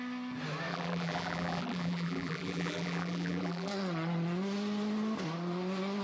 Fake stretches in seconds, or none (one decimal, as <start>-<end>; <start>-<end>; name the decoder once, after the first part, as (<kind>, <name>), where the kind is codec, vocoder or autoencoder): 0.7-3.7 (vocoder, BigVGAN v2)